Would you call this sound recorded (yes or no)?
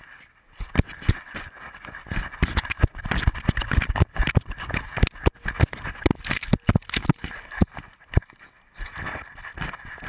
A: yes